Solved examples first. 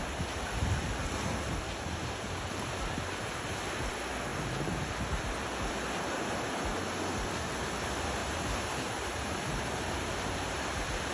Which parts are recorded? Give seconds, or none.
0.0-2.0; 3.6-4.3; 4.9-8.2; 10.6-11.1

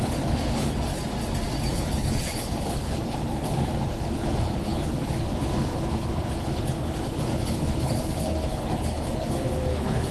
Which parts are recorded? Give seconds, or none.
0.9-1.7

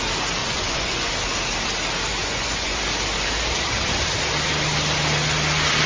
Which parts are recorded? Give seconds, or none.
0.0-0.4; 1.1-2.1; 2.8-5.9

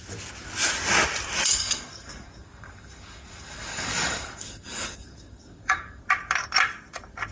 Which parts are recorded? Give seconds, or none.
0.0-1.6; 6.0-7.3

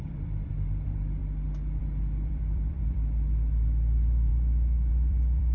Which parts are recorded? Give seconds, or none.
1.2-1.8; 4.3-4.9